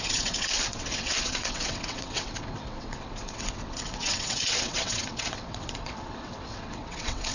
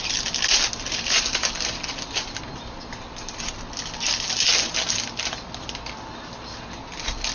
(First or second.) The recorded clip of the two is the second